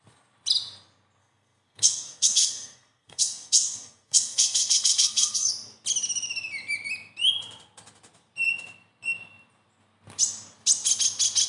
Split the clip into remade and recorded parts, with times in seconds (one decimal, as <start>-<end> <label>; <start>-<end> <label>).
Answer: 0.0-1.2 recorded; 1.2-5.5 remade; 5.5-11.5 recorded